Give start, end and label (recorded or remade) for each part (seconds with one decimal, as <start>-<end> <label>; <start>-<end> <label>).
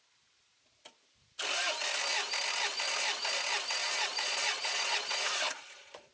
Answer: 0.0-3.8 recorded; 3.8-6.1 remade